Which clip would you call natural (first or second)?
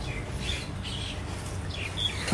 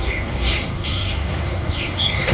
first